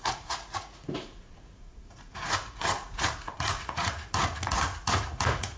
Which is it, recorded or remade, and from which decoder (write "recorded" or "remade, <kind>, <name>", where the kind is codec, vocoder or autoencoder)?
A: remade, vocoder, Vocos